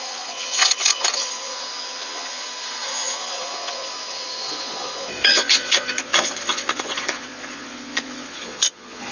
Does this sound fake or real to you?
fake